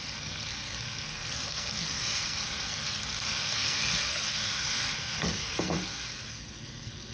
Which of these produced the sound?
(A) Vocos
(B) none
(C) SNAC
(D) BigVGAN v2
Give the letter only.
C